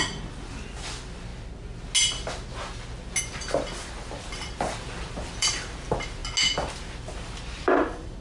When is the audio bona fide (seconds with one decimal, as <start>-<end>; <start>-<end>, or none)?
1.3-3.2; 6.2-7.0